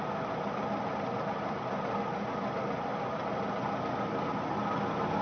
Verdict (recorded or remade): recorded